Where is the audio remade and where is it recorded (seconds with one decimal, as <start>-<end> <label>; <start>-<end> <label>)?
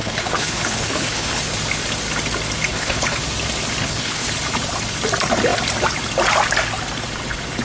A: 0.0-1.4 remade; 1.4-2.7 recorded; 2.7-3.2 remade; 3.2-3.8 recorded; 3.8-4.3 remade; 4.3-7.6 recorded